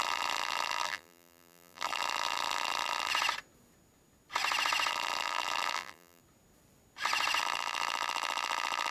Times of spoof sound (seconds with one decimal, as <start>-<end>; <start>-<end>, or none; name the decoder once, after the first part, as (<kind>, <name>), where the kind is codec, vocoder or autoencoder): 0.0-3.1 (vocoder, BigVGAN v2); 4.9-6.2; 7.4-8.9